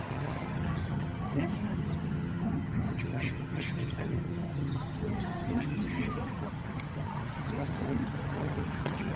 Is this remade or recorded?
remade